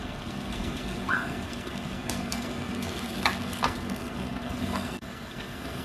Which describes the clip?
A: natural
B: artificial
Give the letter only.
B